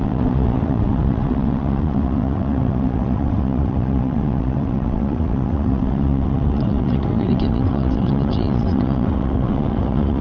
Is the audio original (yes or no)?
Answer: no